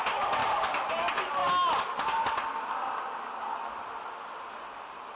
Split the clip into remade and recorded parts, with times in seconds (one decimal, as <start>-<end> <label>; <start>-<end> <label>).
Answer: 0.0-0.4 recorded; 0.4-0.9 remade; 0.9-5.2 recorded